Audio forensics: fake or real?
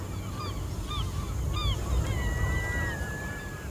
real